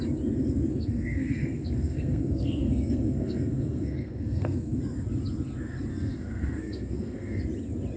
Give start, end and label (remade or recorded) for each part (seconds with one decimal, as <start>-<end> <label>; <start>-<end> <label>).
0.0-0.7 recorded; 0.7-4.8 remade; 4.8-5.9 recorded; 5.9-7.4 remade; 7.4-8.0 recorded